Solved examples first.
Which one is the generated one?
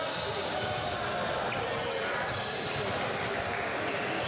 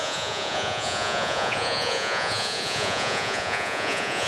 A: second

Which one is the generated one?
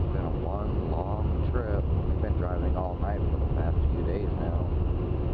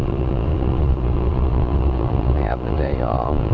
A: second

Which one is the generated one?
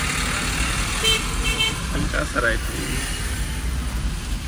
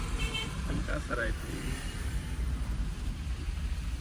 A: second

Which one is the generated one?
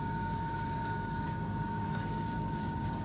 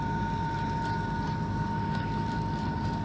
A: first